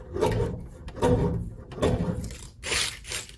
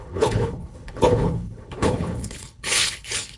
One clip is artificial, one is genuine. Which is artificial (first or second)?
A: second